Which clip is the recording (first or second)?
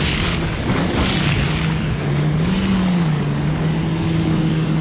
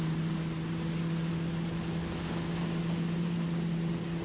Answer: second